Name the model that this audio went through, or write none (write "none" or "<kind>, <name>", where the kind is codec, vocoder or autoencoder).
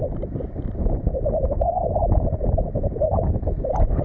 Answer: none